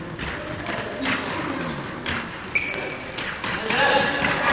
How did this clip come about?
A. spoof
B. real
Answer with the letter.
B